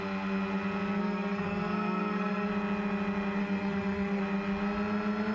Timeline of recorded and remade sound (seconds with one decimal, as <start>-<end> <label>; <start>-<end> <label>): 0.0-1.0 recorded; 1.0-2.5 remade; 2.5-3.4 recorded; 3.4-4.2 remade; 4.2-5.3 recorded